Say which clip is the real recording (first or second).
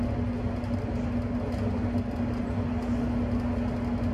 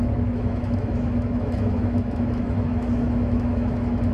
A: first